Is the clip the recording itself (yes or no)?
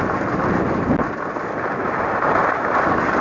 yes